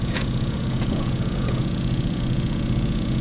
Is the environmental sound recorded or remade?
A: remade